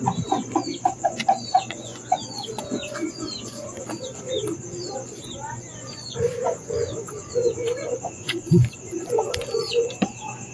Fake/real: fake